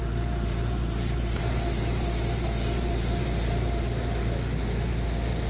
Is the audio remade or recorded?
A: recorded